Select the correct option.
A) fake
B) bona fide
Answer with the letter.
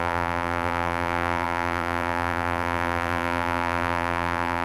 A